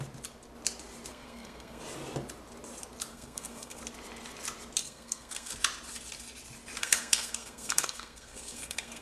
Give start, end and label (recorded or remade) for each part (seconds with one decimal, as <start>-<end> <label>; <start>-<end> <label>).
0.0-1.1 recorded; 1.1-1.8 remade; 1.8-3.1 recorded; 3.1-3.8 remade; 3.8-4.8 recorded; 4.8-5.5 remade; 5.5-6.8 recorded; 6.8-9.0 remade